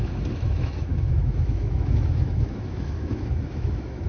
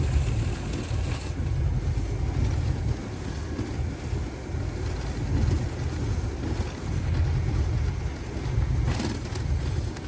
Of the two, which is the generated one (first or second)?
first